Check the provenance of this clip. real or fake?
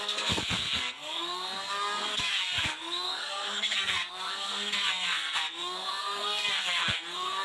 fake